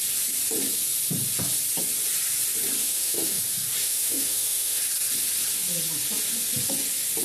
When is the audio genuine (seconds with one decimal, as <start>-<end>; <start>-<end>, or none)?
0.0-2.8; 3.4-3.8; 4.8-7.2